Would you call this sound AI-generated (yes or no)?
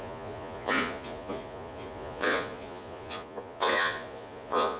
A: yes